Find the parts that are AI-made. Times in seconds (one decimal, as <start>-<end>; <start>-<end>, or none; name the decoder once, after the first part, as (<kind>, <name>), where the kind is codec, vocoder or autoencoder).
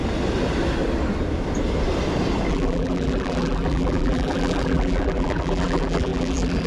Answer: 2.5-6.7 (vocoder, BigVGAN v2)